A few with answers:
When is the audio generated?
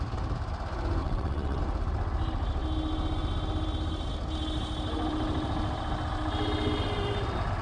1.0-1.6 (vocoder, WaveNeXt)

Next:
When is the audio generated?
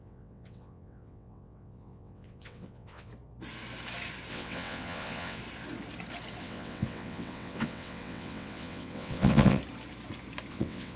0.0-3.1 (vocoder, WaveNeXt); 4.3-5.4; 6.4-9.6; 10.5-11.0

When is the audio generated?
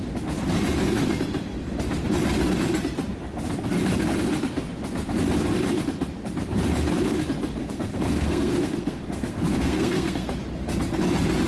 7.6-10.3 (codec, SNAC)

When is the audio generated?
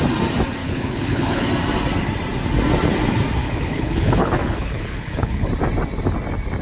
0.6-1.5 (codec, HILCodec); 3.4-5.5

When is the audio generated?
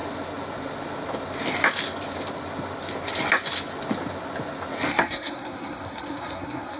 4.9-6.8 (codec, SNAC)